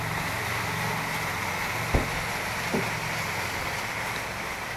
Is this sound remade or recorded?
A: recorded